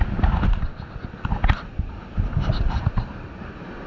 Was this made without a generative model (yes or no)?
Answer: yes